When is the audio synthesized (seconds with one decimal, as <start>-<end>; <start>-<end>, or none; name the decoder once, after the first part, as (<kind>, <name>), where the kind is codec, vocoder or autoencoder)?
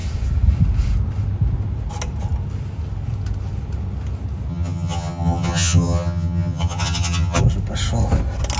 4.5-7.4 (vocoder, HiFi-GAN)